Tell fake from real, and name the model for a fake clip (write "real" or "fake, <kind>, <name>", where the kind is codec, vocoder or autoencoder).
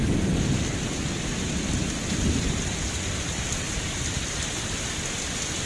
real